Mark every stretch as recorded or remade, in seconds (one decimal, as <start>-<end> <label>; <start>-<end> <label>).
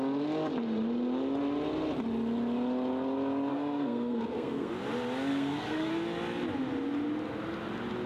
0.0-3.5 recorded; 3.5-4.7 remade; 4.7-5.3 recorded; 5.3-5.9 remade; 5.9-8.1 recorded